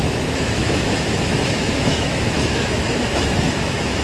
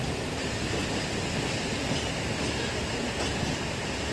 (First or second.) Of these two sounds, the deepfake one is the first